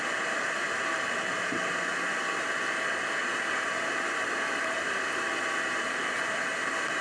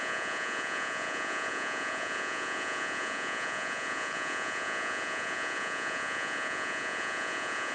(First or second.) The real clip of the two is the first